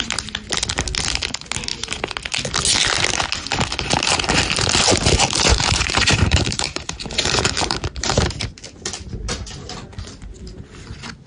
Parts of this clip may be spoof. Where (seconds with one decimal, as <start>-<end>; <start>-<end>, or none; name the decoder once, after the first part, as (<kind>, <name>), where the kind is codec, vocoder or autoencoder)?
5.5-8.6 (vocoder, BigVGAN v2)